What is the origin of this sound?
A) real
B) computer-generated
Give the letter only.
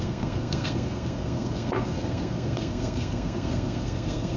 B